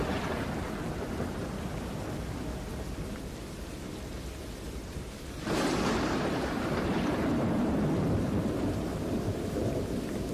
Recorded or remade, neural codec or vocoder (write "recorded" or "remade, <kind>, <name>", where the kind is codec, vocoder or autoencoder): remade, vocoder, BigVGAN v2